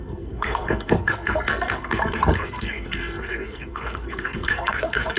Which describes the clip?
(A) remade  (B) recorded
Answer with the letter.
A